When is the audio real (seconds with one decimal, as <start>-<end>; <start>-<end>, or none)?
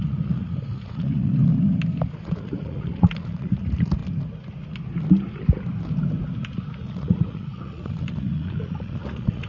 1.4-2.1; 4.0-6.8